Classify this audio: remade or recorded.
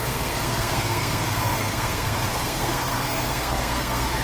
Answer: remade